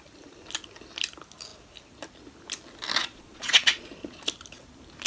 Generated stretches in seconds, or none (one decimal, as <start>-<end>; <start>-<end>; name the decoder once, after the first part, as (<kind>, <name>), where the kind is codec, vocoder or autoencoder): 3.0-3.8 (vocoder, Vocos)